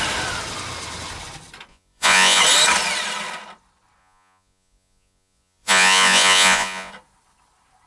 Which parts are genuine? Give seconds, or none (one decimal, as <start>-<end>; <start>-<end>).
0.0-1.7; 2.4-4.0; 6.9-7.9